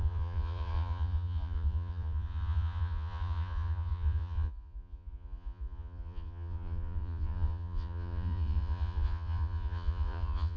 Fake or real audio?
fake